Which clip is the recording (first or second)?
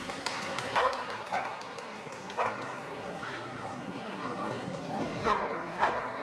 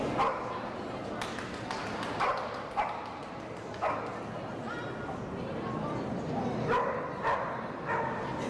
second